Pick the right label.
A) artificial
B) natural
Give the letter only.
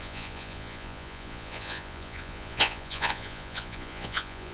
A